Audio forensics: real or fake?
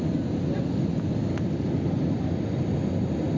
real